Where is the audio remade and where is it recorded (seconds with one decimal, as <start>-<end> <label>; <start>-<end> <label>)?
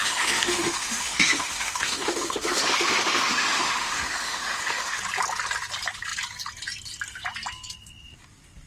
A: 0.0-5.0 remade; 5.0-8.7 recorded